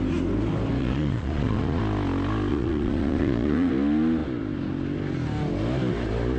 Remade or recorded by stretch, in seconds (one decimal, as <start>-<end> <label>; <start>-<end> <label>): 0.0-0.8 recorded; 0.8-1.8 remade; 1.8-2.5 recorded; 2.5-3.7 remade; 3.7-6.4 recorded